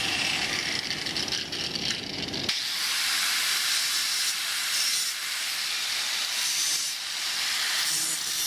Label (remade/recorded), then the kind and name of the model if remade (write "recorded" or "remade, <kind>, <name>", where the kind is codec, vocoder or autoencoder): remade, vocoder, BigVGAN v2